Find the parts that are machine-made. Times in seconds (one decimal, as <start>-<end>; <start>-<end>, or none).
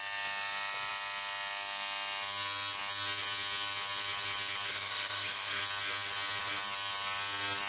4.7-5.6